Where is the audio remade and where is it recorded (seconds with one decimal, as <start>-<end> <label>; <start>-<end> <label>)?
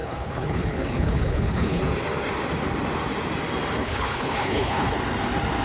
0.0-1.8 remade; 1.8-3.8 recorded; 3.8-4.9 remade; 4.9-5.6 recorded